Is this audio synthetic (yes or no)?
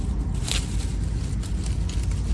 no